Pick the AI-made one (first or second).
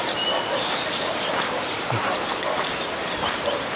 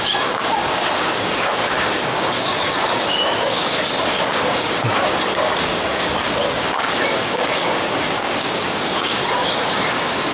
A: second